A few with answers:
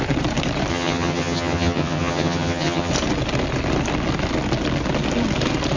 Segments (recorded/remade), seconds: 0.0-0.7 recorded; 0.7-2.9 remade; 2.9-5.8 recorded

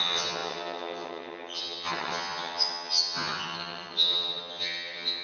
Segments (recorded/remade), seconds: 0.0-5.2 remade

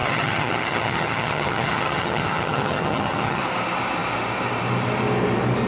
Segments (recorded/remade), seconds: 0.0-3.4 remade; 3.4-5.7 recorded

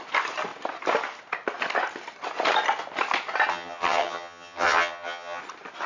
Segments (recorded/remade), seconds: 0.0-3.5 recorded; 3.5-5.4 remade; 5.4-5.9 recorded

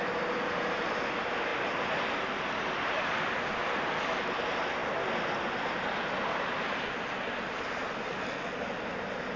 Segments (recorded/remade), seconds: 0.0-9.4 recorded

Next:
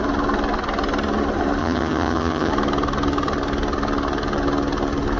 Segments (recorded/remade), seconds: 0.0-1.6 recorded; 1.6-2.5 remade; 2.5-5.2 recorded